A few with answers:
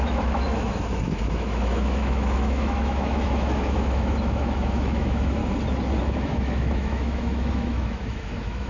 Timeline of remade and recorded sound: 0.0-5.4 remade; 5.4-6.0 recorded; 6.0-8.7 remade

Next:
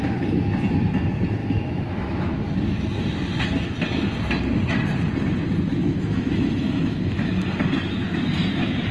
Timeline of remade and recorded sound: 0.0-1.4 recorded; 1.4-2.3 remade; 2.3-5.7 recorded; 5.7-7.3 remade; 7.3-8.9 recorded

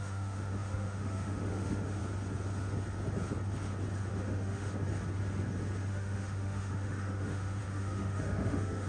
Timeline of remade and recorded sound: 0.0-2.0 remade; 2.0-4.1 recorded; 4.1-4.7 remade; 4.7-5.9 recorded; 5.9-8.9 remade

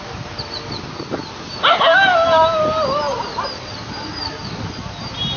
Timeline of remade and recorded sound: 0.0-5.4 recorded

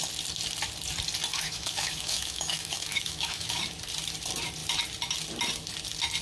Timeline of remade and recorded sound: 0.0-1.3 recorded; 1.3-3.6 remade; 3.6-6.2 recorded

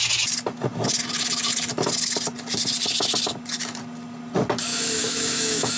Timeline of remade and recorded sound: 0.0-4.7 recorded; 4.7-5.8 remade

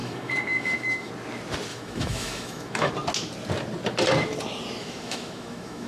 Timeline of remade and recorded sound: 0.0-1.1 remade; 1.1-1.7 recorded; 1.7-2.9 remade; 2.9-4.8 recorded; 4.8-5.9 remade

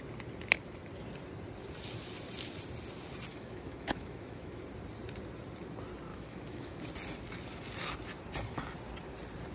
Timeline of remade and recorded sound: 0.0-3.3 recorded; 3.3-4.6 remade; 4.6-6.1 recorded; 6.1-6.8 remade; 6.8-9.5 recorded